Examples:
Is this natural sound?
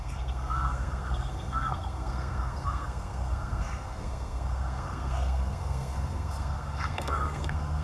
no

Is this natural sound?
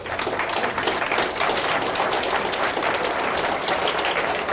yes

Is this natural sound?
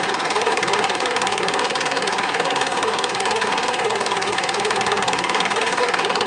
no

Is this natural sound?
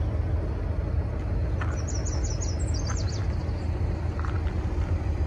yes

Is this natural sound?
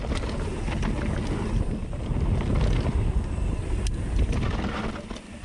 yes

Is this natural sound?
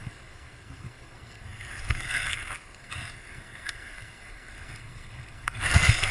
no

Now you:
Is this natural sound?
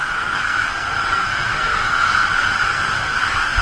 no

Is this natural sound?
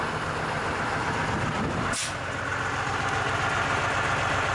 yes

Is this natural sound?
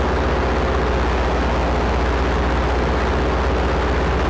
yes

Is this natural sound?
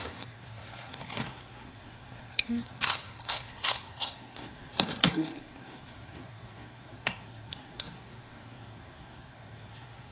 no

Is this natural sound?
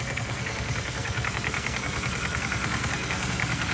no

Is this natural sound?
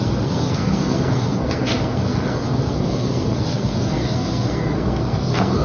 no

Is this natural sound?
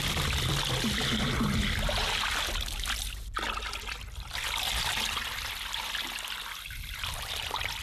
yes